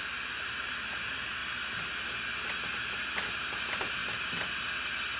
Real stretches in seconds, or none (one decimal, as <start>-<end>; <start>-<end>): 1.4-3.3; 4.0-5.2